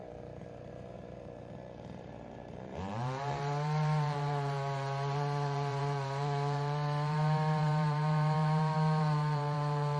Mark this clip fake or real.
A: fake